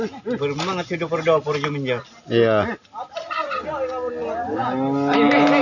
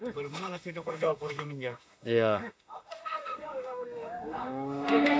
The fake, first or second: second